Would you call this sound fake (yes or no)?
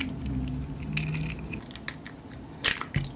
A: no